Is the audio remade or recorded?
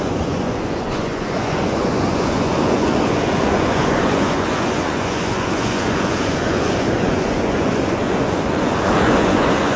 remade